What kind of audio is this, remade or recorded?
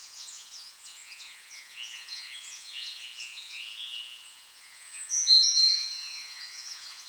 remade